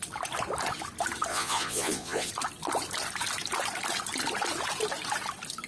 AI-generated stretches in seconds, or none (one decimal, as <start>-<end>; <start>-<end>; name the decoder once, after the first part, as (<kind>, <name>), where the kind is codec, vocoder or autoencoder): 1.3-2.3 (vocoder, Vocos)